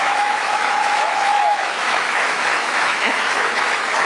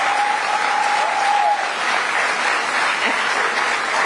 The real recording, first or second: second